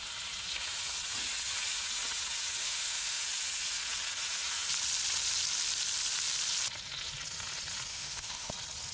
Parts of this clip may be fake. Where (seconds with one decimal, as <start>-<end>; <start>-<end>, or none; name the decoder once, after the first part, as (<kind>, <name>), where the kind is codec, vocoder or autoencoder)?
2.6-3.2 (autoencoder, DAC-VAE); 7.9-8.5